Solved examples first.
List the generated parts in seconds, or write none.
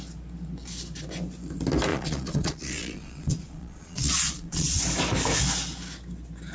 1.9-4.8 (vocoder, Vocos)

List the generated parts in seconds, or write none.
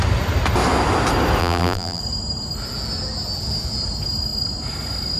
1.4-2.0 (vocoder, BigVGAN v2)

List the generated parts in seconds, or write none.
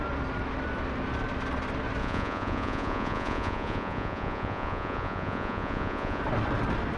2.0-6.2 (vocoder, Vocos)